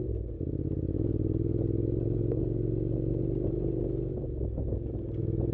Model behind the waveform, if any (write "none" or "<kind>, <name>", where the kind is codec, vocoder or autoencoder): none